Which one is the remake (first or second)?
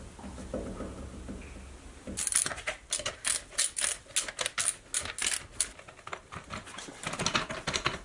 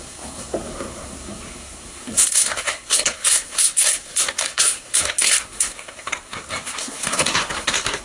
second